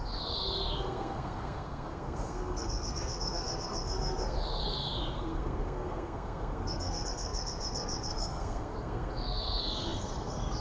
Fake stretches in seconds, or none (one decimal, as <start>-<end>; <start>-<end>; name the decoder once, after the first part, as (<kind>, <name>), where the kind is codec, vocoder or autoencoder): 0.0-10.6 (codec, SNAC)